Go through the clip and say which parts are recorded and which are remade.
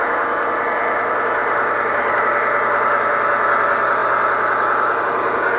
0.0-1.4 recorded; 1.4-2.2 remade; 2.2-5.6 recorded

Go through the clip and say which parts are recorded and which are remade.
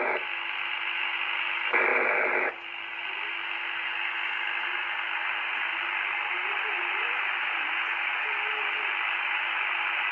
0.0-10.1 recorded